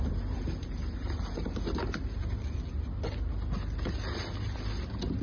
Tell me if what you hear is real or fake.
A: real